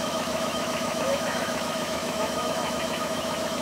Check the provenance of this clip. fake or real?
fake